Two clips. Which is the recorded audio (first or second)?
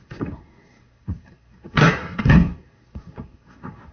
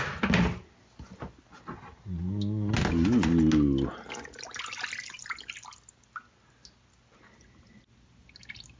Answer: second